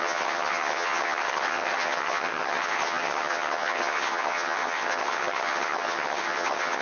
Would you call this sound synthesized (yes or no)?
yes